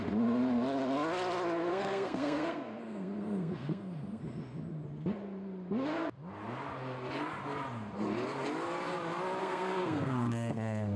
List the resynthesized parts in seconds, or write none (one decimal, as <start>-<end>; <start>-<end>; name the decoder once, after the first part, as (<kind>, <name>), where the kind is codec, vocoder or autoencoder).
1.7-4.2 (codec, SNAC); 9.4-11.0